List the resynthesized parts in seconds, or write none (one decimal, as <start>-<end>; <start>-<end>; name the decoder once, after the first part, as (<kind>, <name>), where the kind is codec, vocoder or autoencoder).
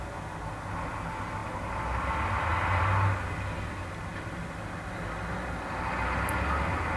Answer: none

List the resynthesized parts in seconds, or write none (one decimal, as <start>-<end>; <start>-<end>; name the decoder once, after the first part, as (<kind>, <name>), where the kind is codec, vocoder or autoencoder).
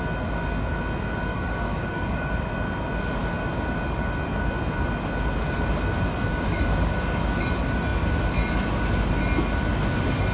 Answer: 1.3-2.3 (codec, DAC); 6.3-7.2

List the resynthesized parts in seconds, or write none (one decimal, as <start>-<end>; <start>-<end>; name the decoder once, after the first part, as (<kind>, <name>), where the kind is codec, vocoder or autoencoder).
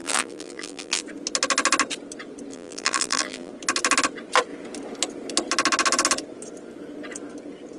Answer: 0.0-1.0 (vocoder, BigVGAN v2); 2.5-3.5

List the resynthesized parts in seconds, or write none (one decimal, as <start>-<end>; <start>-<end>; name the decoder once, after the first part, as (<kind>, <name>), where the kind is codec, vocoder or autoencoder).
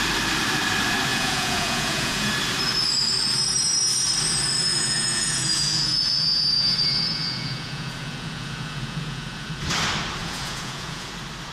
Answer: 1.1-2.3 (vocoder, Vocos); 4.7-9.6; 10.2-11.1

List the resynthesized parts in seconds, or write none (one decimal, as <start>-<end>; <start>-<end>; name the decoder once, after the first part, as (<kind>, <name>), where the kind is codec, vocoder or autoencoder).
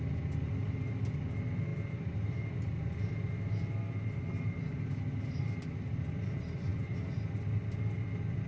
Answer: none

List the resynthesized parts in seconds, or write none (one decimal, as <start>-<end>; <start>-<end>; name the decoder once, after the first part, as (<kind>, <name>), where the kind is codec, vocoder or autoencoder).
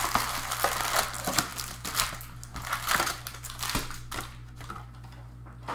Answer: none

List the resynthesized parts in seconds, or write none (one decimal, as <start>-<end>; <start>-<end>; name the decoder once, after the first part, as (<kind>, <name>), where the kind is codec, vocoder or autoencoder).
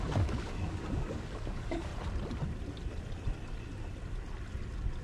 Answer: 0.0-1.9 (codec, DAC)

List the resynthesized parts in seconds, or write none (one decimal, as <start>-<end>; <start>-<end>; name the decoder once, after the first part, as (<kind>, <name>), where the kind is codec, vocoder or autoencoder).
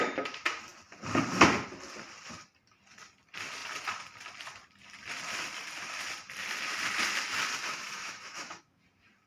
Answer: 7.7-8.8 (autoencoder, DAC-VAE)